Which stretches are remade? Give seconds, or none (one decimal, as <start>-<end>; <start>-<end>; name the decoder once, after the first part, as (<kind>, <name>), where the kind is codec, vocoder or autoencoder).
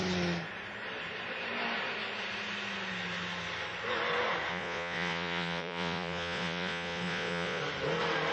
4.5-7.6 (vocoder, Vocos)